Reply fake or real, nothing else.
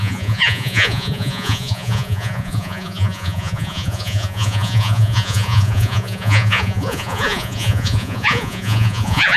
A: fake